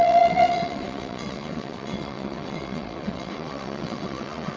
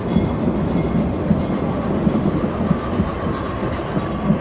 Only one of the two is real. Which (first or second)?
second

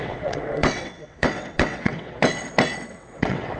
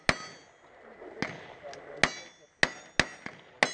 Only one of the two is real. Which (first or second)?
second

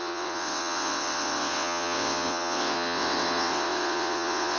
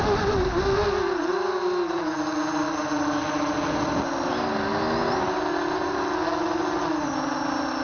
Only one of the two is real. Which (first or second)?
second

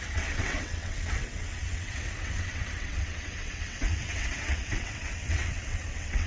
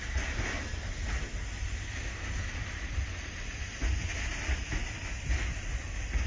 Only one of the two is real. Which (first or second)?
second